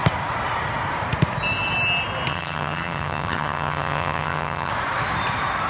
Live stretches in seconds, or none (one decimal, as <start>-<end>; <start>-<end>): 0.0-2.3; 4.7-5.7